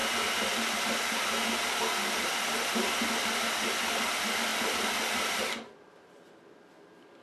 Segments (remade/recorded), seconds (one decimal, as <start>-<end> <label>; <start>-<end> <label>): 0.0-4.5 recorded; 4.5-6.1 remade; 6.1-7.2 recorded